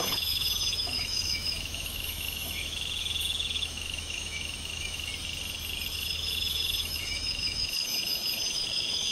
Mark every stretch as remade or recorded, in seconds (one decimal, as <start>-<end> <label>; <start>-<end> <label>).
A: 0.0-5.1 remade; 5.1-5.9 recorded; 5.9-9.1 remade